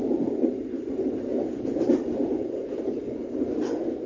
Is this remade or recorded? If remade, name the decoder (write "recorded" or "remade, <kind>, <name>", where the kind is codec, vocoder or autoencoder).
recorded